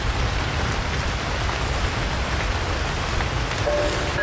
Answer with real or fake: real